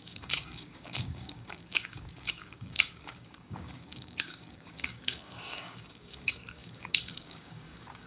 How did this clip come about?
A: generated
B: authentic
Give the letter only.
A